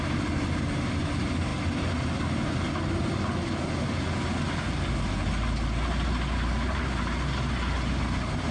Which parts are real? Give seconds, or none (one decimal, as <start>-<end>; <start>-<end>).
0.0-8.5